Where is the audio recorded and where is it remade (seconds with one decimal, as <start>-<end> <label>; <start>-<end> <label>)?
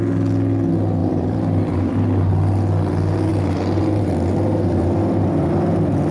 0.0-1.0 recorded; 1.0-2.3 remade; 2.3-3.3 recorded; 3.3-4.1 remade; 4.1-6.1 recorded